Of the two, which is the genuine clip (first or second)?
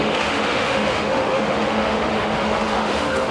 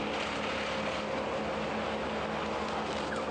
second